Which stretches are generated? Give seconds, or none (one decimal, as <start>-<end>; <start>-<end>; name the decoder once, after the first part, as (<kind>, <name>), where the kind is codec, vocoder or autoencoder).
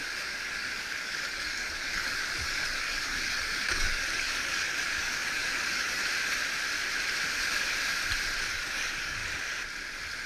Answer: 0.0-6.0 (codec, DAC); 8.5-9.2